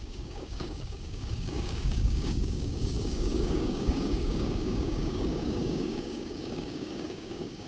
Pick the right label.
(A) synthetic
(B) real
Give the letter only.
A